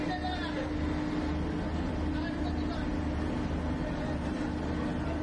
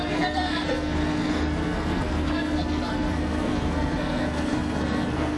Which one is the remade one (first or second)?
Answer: second